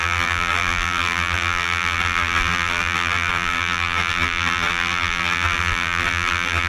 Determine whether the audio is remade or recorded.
remade